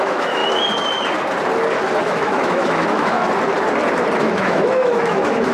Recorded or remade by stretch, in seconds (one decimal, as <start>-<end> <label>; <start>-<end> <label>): 0.0-0.4 remade; 0.4-2.0 recorded; 2.0-3.2 remade; 3.2-4.2 recorded; 4.2-5.5 remade